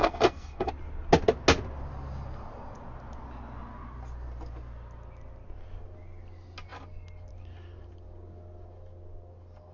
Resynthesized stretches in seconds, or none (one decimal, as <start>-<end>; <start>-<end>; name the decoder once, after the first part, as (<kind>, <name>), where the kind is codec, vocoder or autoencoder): 0.0-0.7 (codec, SNAC)